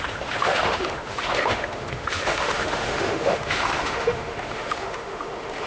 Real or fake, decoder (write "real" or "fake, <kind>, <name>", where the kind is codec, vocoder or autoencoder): fake, autoencoder, DAC-VAE